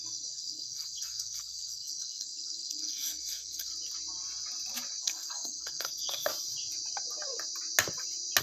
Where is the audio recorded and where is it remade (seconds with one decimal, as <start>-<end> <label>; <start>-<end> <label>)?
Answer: 0.0-3.7 remade; 3.7-5.0 recorded; 5.0-6.3 remade; 6.3-8.4 recorded